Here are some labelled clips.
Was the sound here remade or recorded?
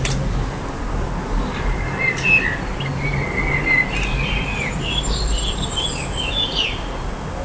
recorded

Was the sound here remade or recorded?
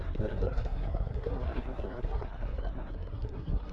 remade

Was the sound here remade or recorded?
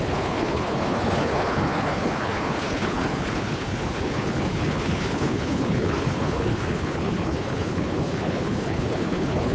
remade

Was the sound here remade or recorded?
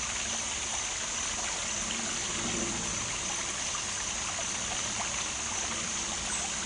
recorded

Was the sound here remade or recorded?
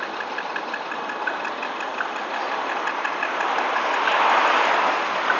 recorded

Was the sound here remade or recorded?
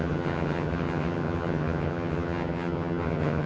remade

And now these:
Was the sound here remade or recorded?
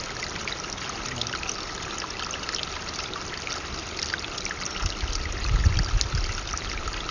recorded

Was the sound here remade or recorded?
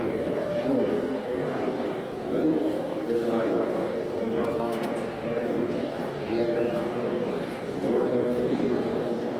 remade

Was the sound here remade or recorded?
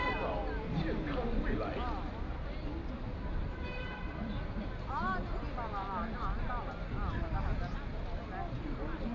recorded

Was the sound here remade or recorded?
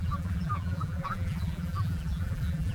remade